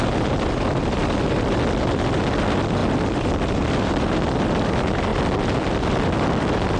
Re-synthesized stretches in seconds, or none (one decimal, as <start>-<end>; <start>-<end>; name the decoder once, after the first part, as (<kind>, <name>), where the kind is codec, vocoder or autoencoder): 2.8-3.7 (vocoder, BigVGAN v2); 5.1-6.8